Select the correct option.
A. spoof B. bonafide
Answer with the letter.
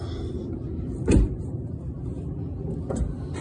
B